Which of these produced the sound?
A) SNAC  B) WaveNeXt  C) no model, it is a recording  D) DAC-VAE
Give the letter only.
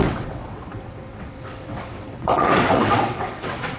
B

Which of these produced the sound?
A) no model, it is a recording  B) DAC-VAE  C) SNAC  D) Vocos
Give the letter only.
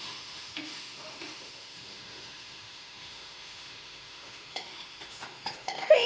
B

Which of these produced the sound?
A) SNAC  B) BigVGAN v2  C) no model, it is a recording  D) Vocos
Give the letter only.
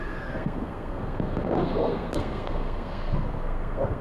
A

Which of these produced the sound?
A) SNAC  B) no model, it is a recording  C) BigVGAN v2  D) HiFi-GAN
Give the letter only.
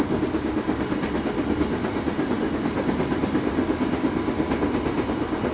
B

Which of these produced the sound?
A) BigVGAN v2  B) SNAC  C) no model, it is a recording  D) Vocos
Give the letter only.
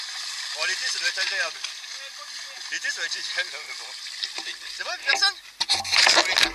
C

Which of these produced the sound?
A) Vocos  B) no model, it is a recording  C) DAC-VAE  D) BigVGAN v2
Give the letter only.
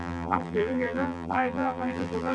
D